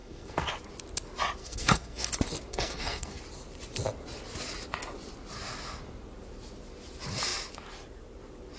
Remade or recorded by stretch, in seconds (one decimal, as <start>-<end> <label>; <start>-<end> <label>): 0.0-0.5 remade; 0.5-1.4 recorded; 1.4-2.1 remade; 2.1-2.5 recorded; 2.5-3.2 remade; 3.2-8.6 recorded